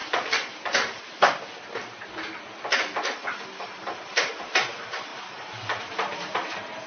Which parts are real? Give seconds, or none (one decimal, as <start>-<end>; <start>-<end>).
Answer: 0.0-4.1; 5.1-5.8